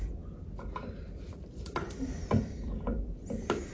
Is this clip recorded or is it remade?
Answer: recorded